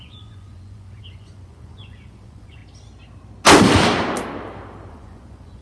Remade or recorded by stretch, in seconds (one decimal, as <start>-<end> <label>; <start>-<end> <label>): 0.0-2.6 remade; 2.6-4.9 recorded; 4.9-5.6 remade